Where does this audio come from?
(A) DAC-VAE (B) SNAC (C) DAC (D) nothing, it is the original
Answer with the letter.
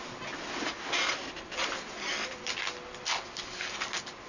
D